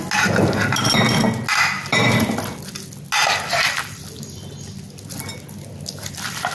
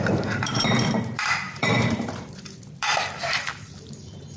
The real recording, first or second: first